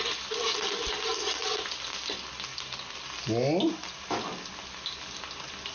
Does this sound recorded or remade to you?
recorded